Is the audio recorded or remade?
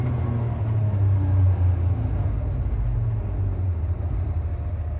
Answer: recorded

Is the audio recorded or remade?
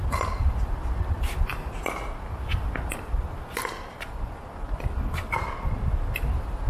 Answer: recorded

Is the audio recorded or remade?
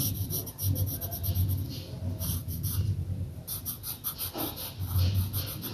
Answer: recorded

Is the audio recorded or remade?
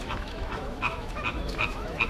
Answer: remade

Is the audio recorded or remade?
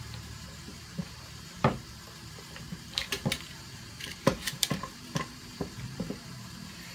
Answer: remade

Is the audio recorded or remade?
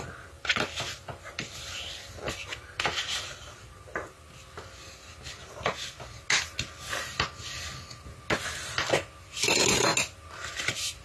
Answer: recorded